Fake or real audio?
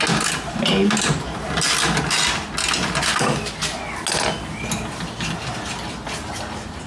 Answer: real